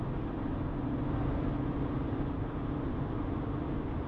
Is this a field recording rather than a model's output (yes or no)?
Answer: yes